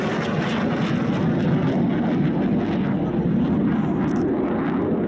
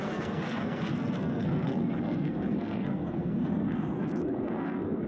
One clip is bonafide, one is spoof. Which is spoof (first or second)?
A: second